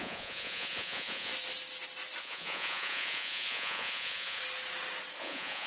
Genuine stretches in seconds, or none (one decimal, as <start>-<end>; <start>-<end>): 1.3-2.2; 4.4-5.2